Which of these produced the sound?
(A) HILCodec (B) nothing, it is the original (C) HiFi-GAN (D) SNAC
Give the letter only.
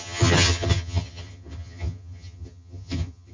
C